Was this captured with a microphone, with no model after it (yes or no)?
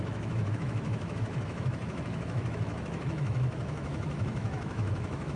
no